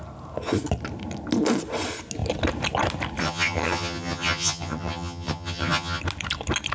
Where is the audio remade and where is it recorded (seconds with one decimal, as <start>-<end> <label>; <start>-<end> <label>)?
0.0-3.2 recorded; 3.2-6.0 remade; 6.0-6.7 recorded